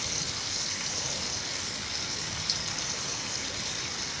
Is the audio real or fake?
fake